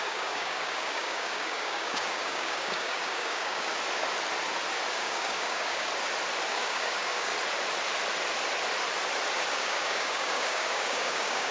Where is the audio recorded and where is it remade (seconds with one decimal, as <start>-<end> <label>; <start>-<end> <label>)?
0.0-3.7 remade; 3.7-4.9 recorded; 4.9-5.9 remade; 5.9-6.5 recorded; 6.5-7.3 remade; 7.3-9.5 recorded; 9.5-11.5 remade